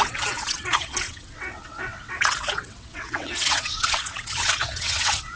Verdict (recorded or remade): remade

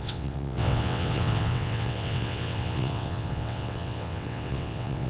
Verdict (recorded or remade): remade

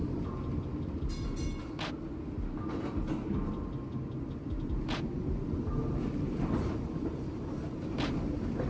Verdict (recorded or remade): recorded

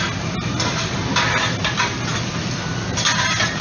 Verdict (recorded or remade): recorded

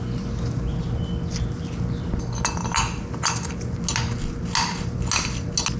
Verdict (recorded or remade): recorded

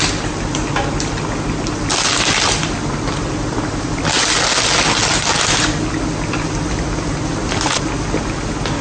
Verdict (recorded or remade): recorded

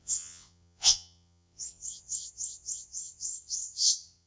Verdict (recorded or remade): remade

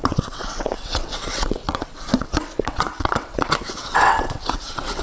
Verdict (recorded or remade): remade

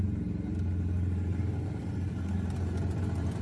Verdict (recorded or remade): recorded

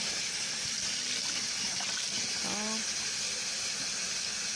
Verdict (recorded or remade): recorded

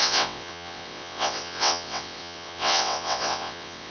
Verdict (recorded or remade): remade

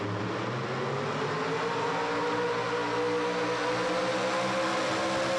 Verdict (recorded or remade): recorded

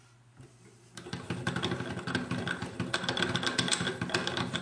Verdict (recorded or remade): recorded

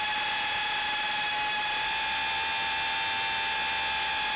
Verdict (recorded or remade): recorded